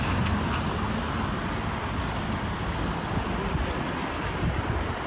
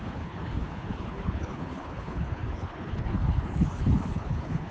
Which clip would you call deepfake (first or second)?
second